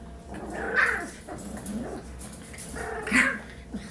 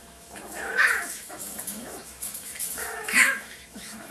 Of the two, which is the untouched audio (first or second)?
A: first